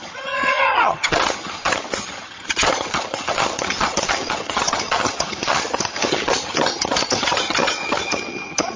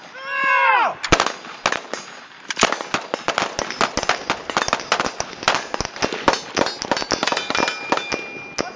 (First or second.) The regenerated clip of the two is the first